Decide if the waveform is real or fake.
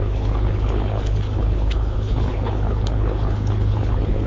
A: fake